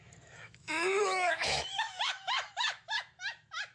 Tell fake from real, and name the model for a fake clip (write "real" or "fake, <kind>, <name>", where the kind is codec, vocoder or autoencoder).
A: fake, autoencoder, DAC-VAE